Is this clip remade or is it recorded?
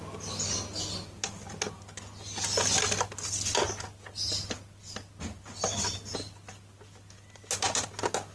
recorded